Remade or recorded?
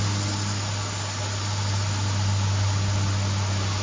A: recorded